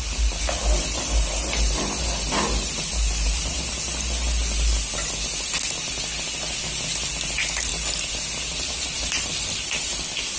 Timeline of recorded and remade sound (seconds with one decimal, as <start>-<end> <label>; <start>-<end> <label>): 0.0-10.4 recorded